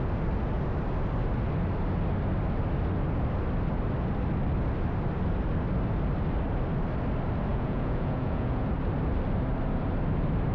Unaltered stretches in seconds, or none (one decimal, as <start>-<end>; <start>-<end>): 0.0-7.5; 8.6-10.5